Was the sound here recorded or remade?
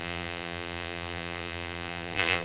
remade